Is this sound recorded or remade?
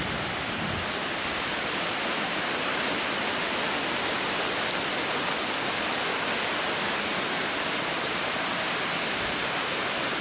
recorded